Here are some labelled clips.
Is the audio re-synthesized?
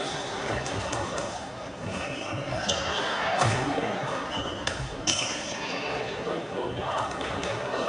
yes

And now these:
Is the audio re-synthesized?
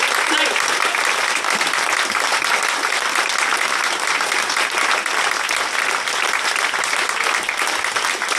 no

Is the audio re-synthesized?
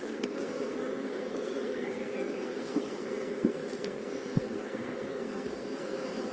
yes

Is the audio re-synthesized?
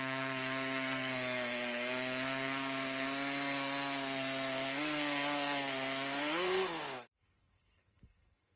yes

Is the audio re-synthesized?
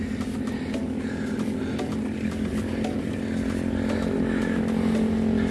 no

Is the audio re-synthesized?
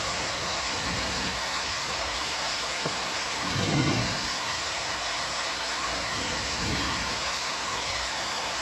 yes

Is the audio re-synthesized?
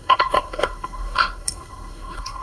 yes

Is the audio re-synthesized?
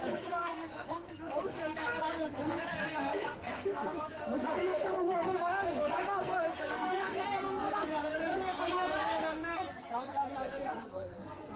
yes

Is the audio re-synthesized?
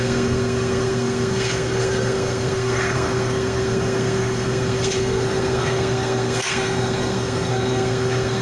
yes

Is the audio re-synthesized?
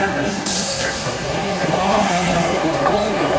yes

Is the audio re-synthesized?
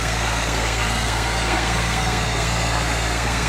yes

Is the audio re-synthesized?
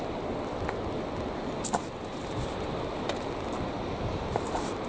no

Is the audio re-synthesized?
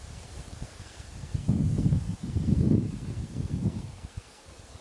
yes